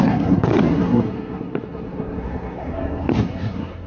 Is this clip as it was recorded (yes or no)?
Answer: no